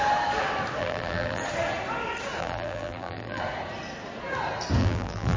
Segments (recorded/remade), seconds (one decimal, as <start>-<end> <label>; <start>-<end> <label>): 0.0-0.8 recorded; 0.8-1.4 remade; 1.4-2.4 recorded; 2.4-3.4 remade; 3.4-4.8 recorded; 4.8-5.4 remade